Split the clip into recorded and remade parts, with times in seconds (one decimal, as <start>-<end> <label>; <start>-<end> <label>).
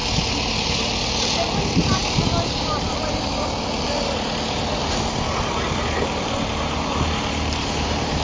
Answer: 0.0-8.2 remade